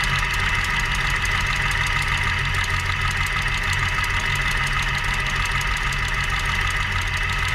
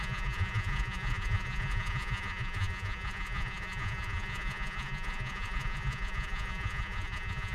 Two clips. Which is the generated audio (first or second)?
second